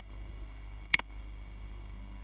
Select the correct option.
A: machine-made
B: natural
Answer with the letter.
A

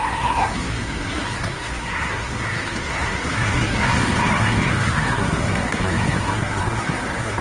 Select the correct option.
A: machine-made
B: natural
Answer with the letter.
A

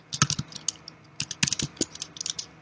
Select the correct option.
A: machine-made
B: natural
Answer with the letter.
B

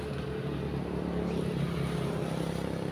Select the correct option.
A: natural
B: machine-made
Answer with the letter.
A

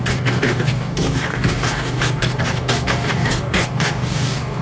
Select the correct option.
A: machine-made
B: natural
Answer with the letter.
A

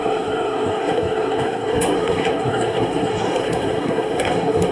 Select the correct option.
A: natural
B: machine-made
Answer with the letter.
B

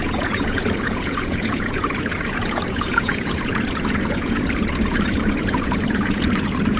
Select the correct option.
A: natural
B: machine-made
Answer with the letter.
B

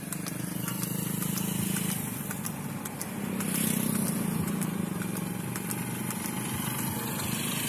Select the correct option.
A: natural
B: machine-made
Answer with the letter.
A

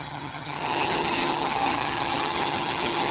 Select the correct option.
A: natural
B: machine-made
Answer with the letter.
B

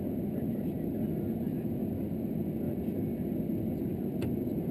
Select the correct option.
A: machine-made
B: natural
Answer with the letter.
B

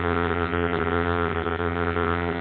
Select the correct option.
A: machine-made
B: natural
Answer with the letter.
A